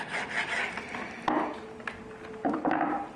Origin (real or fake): real